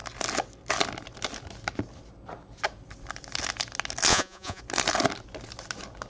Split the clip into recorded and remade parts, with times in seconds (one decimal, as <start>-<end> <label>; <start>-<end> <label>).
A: 0.0-4.1 recorded; 4.1-4.6 remade; 4.6-6.1 recorded